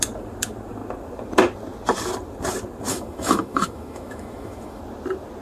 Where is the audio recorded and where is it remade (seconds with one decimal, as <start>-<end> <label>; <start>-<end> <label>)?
0.0-2.9 recorded; 2.9-4.8 remade; 4.8-5.4 recorded